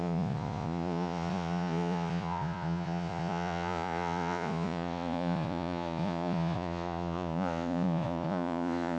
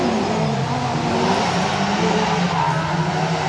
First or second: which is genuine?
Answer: second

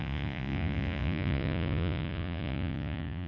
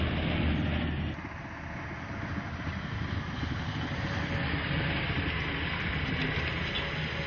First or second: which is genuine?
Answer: second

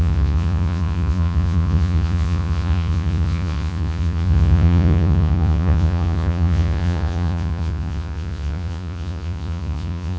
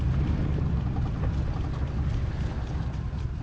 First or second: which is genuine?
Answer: second